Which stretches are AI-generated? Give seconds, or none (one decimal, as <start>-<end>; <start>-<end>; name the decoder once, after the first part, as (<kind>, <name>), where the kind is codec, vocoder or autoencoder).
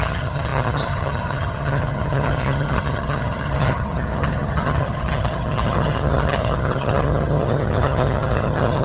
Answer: 0.0-8.8 (vocoder, HiFi-GAN)